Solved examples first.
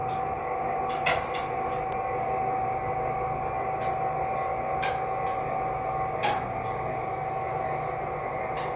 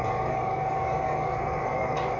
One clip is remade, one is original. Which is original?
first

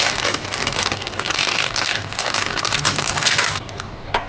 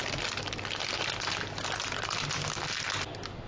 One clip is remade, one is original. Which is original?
second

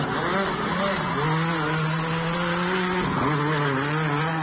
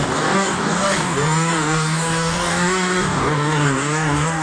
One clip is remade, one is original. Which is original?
first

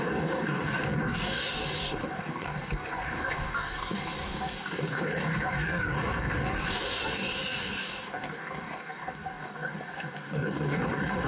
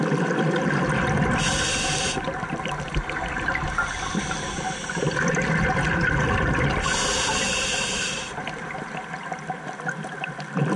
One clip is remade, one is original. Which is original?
second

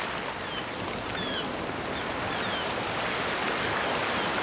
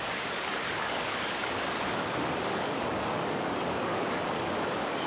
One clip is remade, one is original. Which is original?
first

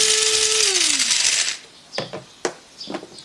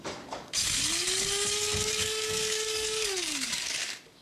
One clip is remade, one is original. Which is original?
first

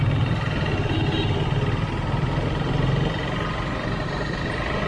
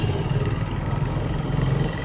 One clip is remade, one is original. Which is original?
first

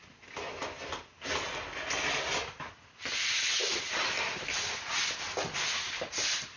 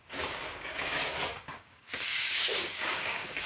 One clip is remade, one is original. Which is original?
first